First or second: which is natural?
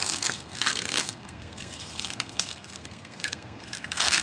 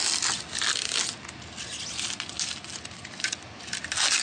second